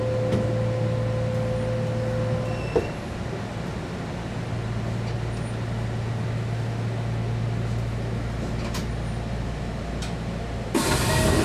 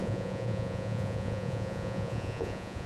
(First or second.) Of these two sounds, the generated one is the second